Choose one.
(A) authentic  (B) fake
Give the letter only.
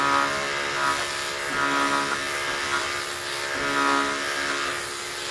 A